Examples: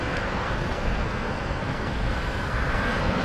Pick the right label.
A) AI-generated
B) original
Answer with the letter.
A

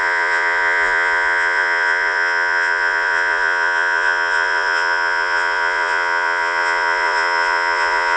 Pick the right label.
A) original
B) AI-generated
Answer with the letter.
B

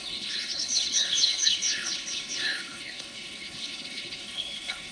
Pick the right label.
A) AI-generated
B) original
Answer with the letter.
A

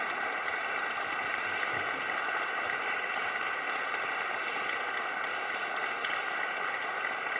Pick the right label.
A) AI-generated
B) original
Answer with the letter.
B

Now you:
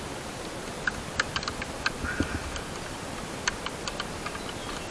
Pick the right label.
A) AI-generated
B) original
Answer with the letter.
B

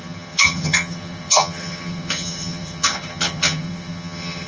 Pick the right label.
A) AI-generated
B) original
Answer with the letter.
A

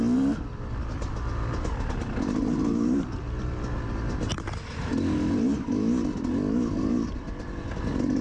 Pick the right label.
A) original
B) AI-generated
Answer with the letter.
A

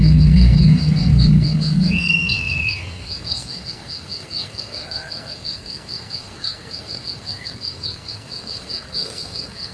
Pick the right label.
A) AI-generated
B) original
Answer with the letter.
A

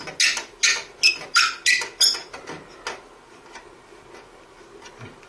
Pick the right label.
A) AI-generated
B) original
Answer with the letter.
B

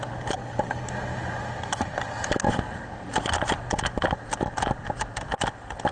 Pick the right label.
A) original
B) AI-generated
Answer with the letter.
A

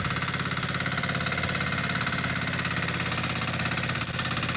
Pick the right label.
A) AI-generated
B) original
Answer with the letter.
B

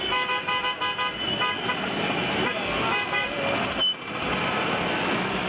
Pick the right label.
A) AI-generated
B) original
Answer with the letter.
B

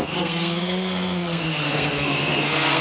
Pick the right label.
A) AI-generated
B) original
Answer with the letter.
A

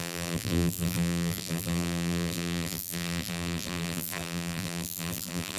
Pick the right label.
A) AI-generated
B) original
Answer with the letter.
A